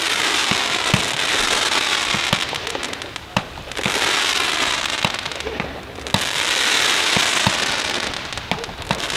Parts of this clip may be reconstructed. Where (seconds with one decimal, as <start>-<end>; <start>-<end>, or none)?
none